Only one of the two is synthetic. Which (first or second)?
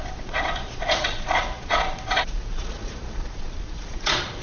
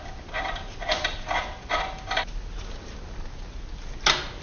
first